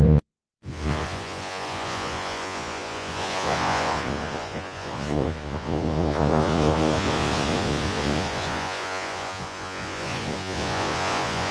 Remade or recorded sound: remade